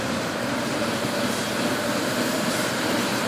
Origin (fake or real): fake